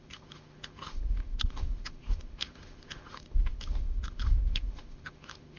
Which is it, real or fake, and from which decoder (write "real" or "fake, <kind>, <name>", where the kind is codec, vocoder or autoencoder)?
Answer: fake, autoencoder, DAC-VAE